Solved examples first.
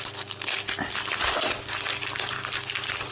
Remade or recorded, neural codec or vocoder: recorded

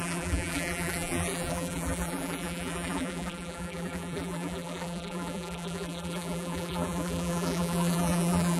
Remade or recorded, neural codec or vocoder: remade, vocoder, BigVGAN v2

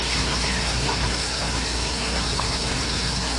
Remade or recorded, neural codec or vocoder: remade, codec, SNAC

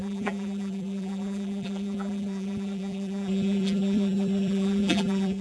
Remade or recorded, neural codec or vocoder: remade, vocoder, BigVGAN v2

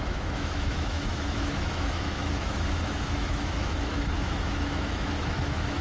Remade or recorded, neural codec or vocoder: remade, autoencoder, DAC-VAE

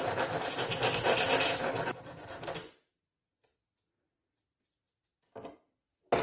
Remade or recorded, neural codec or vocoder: recorded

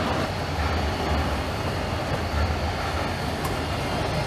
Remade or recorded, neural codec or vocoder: recorded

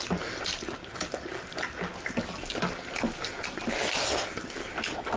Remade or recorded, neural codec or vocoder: recorded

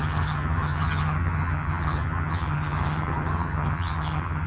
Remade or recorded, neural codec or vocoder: remade, vocoder, HiFi-GAN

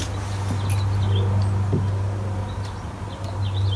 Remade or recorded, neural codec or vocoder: recorded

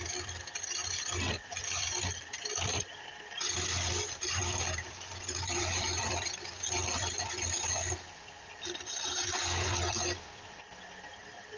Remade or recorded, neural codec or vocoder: recorded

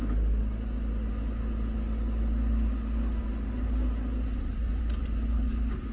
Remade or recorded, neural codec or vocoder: recorded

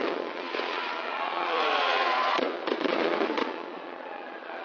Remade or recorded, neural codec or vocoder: remade, vocoder, Vocos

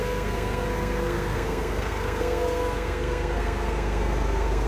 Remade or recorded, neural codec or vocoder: remade, codec, SNAC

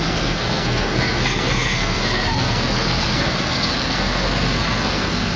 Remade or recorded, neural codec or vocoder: remade, codec, SNAC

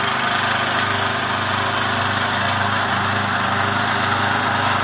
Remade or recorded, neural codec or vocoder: recorded